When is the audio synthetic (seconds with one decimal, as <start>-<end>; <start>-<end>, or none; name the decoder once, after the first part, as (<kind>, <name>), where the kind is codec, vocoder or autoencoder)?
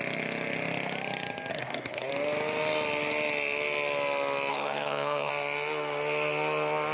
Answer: 1.5-2.1 (codec, SNAC); 4.5-5.3